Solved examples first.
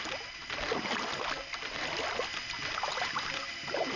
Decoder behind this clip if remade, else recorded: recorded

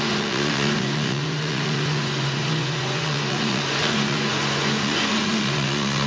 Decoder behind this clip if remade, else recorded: remade, vocoder, Vocos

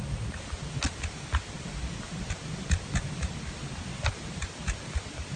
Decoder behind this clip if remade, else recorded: recorded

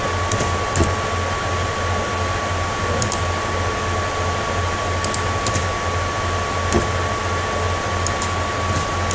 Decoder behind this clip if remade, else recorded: recorded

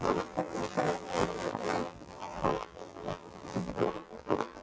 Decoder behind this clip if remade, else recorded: remade, vocoder, BigVGAN v2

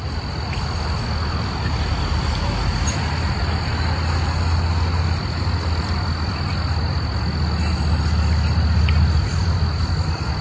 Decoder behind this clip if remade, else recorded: recorded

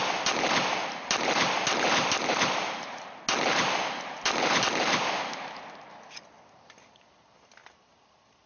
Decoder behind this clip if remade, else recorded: recorded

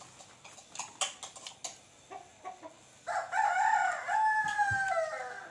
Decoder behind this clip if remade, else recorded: recorded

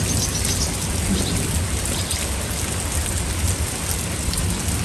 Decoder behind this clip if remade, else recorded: recorded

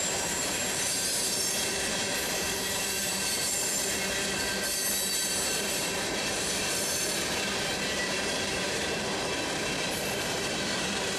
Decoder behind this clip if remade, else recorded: remade, vocoder, BigVGAN v2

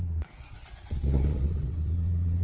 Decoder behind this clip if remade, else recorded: remade, vocoder, Vocos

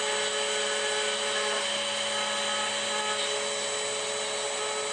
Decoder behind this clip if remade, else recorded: recorded